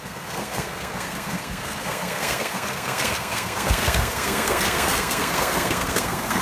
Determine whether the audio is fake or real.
fake